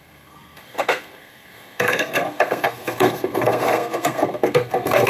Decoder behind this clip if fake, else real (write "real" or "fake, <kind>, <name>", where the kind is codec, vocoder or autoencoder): fake, codec, SNAC